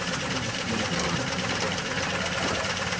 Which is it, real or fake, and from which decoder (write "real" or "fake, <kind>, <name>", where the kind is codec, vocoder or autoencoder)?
fake, vocoder, BigVGAN v2